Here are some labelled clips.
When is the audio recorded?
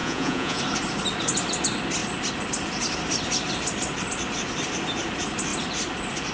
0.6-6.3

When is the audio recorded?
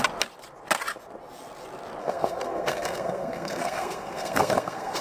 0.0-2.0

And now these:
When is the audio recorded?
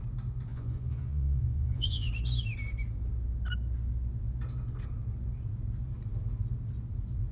0.0-0.5; 2.1-7.3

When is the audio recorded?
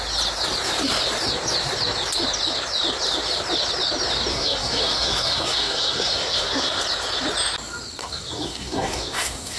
0.0-4.3; 6.8-8.0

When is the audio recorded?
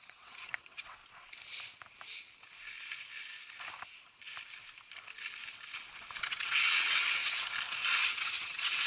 1.0-6.2; 7.2-8.1